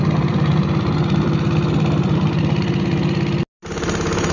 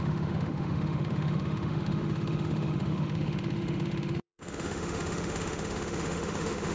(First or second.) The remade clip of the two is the second